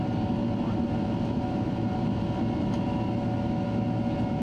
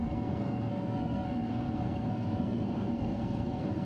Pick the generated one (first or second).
second